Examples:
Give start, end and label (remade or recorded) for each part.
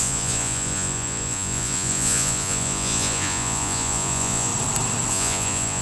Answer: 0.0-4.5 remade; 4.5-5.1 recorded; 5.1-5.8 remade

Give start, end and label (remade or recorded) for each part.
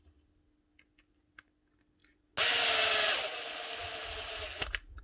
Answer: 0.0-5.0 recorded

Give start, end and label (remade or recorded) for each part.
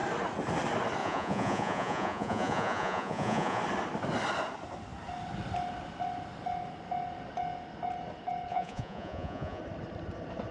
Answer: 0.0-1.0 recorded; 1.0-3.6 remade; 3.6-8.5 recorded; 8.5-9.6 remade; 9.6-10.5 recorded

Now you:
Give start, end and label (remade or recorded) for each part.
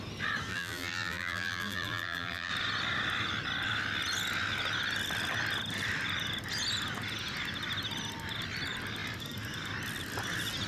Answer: 0.0-0.5 recorded; 0.5-2.5 remade; 2.5-10.7 recorded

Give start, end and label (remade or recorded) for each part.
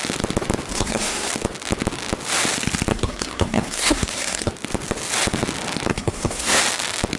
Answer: 0.0-0.7 recorded; 0.7-1.3 remade; 1.3-2.9 recorded; 2.9-4.5 remade; 4.5-5.9 recorded; 5.9-6.6 remade; 6.6-7.2 recorded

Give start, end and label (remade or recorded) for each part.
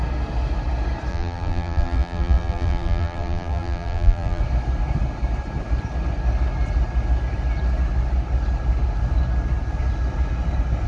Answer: 0.0-1.1 recorded; 1.1-4.4 remade; 4.4-10.9 recorded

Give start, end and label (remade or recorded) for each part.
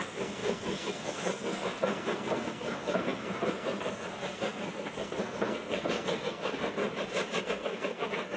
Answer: 0.0-6.8 remade; 6.8-7.4 recorded; 7.4-8.4 remade